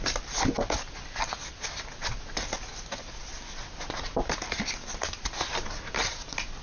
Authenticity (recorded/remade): recorded